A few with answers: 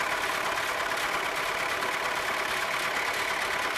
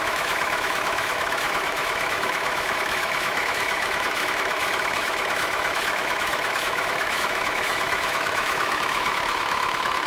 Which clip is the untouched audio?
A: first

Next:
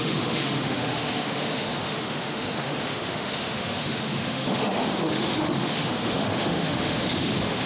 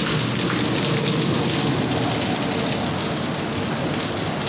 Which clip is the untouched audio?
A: second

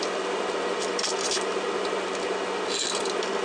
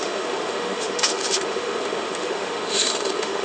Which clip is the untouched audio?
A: first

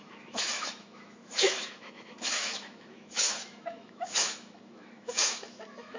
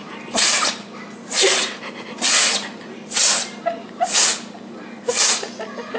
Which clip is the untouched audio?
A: second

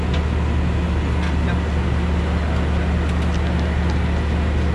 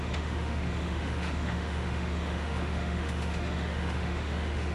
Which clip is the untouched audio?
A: first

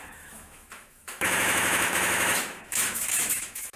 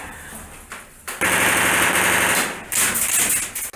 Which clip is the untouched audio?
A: second